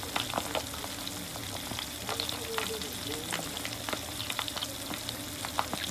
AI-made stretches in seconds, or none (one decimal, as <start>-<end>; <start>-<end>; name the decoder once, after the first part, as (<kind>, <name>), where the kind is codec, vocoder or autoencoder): none